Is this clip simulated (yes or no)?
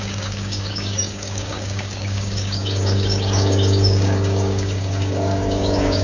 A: yes